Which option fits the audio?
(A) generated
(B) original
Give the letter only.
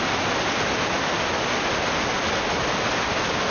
B